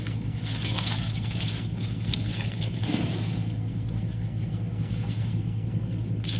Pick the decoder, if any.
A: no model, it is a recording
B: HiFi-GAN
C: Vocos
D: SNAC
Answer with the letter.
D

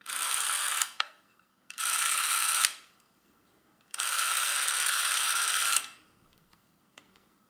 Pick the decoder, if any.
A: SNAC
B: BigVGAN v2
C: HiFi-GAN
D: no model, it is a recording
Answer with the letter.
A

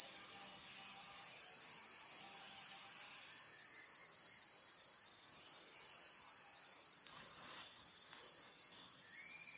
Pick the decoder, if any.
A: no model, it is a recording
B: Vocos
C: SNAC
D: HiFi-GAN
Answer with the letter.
A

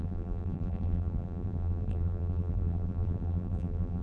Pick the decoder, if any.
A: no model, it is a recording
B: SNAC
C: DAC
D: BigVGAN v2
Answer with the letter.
D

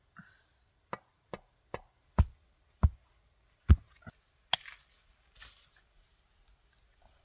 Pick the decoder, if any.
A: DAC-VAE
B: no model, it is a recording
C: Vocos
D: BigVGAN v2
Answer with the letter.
B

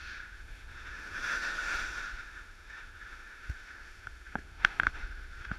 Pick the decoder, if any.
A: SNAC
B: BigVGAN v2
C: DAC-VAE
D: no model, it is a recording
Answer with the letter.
C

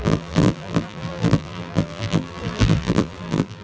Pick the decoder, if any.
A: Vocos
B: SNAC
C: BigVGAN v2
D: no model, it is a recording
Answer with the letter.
C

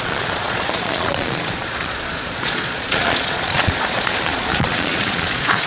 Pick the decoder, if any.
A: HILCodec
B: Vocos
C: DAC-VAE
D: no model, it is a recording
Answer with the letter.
B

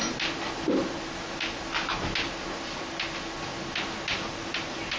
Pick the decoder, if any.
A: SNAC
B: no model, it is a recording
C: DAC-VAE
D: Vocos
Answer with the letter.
B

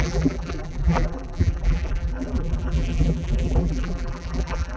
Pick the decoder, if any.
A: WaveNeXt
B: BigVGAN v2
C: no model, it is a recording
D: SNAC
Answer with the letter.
B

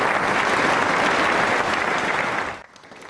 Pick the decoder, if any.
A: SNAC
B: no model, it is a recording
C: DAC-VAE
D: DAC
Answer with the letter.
B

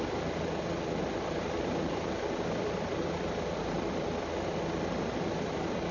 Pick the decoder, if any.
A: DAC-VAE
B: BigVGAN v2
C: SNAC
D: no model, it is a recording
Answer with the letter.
B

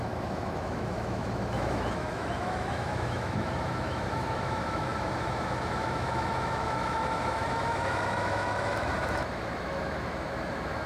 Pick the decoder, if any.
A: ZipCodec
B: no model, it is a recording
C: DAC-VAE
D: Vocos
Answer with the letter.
C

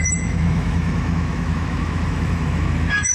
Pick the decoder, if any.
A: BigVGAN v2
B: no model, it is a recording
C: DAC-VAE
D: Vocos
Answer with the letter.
C